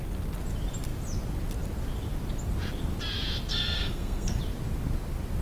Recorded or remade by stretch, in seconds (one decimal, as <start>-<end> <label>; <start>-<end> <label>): 0.0-3.5 recorded; 3.5-4.4 remade; 4.4-5.4 recorded